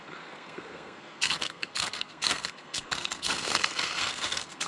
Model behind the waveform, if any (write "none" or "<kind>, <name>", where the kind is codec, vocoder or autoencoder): codec, SNAC